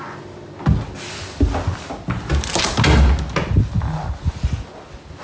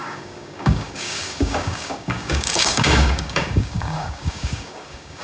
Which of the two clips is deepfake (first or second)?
second